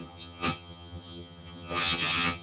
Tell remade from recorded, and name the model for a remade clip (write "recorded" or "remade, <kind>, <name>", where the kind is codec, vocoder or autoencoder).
remade, vocoder, HiFi-GAN